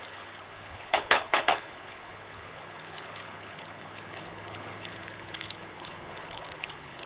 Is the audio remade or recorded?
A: remade